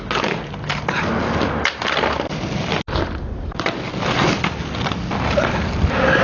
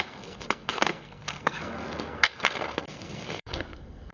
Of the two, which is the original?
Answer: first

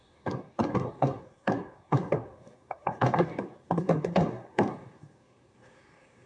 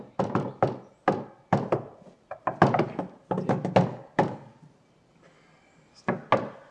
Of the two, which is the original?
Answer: second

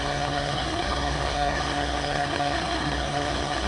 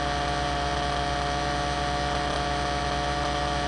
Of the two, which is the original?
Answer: second